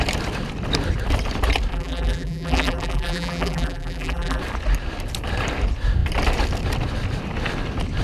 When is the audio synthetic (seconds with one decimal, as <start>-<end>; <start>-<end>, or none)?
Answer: 1.7-4.4